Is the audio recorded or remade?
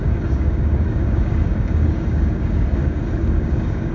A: remade